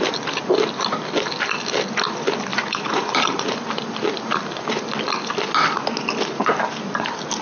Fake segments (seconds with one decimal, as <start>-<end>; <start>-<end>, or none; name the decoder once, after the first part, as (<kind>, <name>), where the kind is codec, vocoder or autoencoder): 2.5-3.1 (vocoder, Vocos)